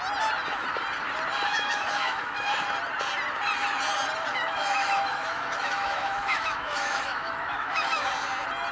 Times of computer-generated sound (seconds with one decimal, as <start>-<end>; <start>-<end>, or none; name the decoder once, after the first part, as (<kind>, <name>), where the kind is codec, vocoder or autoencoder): 1.5-2.5 (autoencoder, DAC-VAE); 4.3-8.1